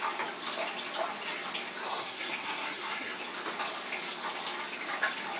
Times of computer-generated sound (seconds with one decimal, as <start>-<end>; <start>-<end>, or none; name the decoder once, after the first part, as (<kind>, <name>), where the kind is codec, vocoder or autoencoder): 1.8-3.2 (codec, SNAC)